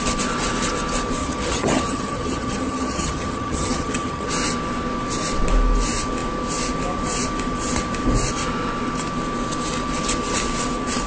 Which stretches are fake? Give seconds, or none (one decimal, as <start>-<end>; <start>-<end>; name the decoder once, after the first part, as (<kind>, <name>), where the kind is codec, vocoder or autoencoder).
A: 1.2-4.3 (vocoder, HiFi-GAN)

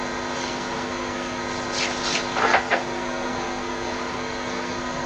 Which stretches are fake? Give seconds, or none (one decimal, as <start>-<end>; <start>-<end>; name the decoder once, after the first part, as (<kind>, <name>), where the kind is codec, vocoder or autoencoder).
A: 0.4-1.4 (codec, SNAC); 2.4-5.1

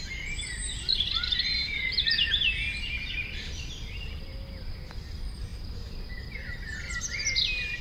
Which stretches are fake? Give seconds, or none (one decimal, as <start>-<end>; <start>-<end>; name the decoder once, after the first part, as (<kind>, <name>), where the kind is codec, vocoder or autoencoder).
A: 1.4-3.1 (vocoder, BigVGAN v2); 6.7-7.2

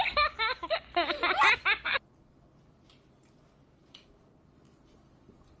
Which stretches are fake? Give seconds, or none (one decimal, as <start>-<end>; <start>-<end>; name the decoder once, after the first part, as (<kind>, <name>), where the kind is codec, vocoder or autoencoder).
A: none

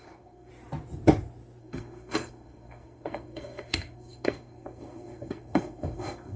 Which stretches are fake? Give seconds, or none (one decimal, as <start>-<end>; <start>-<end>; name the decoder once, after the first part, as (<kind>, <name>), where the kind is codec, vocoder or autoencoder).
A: 0.0-0.5 (codec, SNAC); 1.6-6.4

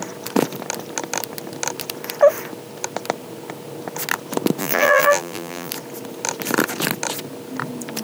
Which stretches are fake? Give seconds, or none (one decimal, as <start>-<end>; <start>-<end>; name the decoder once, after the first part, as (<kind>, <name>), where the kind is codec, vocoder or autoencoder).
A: 4.6-5.7 (vocoder, BigVGAN v2)

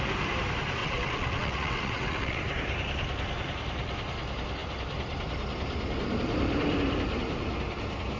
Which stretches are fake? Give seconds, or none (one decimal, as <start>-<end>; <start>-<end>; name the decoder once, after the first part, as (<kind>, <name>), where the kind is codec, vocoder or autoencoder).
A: 0.8-2.4 (vocoder, WaveNeXt)

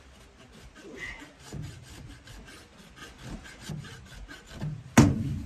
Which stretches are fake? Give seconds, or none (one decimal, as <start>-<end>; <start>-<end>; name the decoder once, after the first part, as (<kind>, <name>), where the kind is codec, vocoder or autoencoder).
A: none